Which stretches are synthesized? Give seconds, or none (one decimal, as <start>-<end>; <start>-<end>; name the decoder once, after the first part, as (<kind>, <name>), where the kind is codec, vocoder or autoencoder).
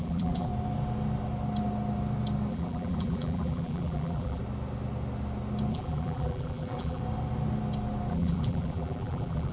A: 0.0-0.5 (vocoder, BigVGAN v2); 2.5-4.4; 5.7-7.0; 8.1-9.5